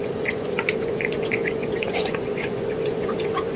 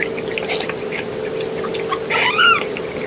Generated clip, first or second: first